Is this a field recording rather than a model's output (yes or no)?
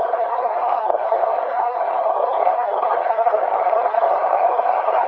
no